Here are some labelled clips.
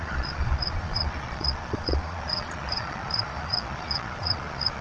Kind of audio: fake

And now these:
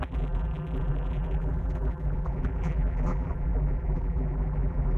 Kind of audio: fake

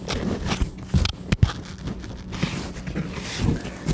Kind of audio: real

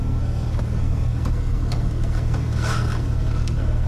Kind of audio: fake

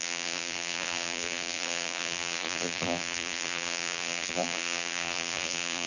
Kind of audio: fake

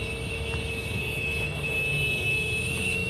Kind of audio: fake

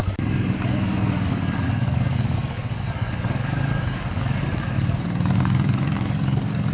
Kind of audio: fake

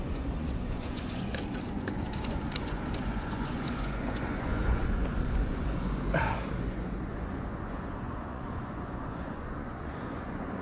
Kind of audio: fake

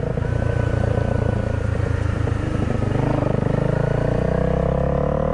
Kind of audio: real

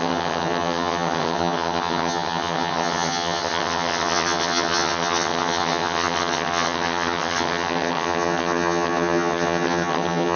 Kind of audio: fake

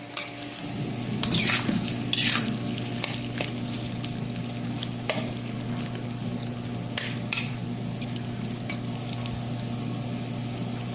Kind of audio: real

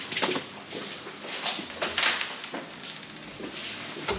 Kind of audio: fake